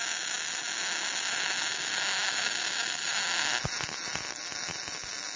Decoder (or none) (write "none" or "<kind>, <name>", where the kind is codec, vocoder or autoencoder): none